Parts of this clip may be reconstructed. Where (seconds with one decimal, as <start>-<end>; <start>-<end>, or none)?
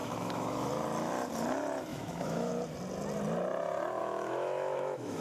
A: 0.0-0.7; 1.9-2.5; 4.0-5.2